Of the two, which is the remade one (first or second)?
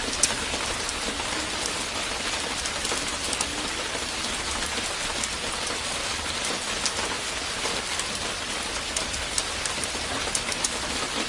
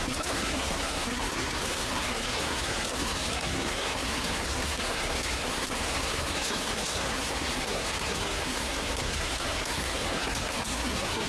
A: second